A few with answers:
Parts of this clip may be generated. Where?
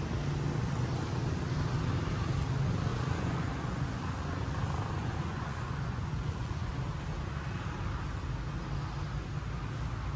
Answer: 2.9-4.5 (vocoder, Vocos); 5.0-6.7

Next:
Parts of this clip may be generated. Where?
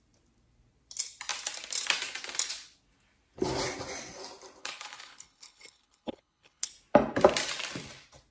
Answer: 4.6-6.7 (codec, HILCodec)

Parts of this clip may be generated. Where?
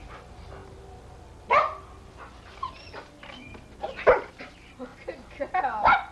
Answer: none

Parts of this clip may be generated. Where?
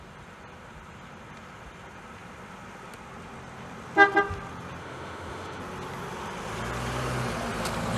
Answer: 4.8-5.6 (autoencoder, DAC-VAE)